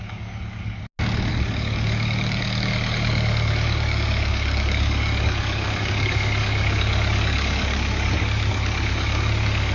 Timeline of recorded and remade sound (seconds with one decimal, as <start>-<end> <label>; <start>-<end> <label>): 0.0-0.8 remade; 0.8-1.3 recorded; 1.3-9.7 remade